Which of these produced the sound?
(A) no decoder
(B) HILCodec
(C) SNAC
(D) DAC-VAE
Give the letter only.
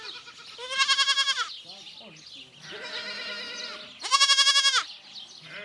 A